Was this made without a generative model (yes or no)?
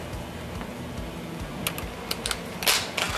yes